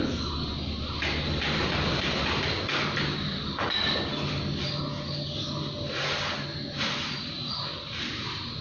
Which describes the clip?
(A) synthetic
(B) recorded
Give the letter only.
B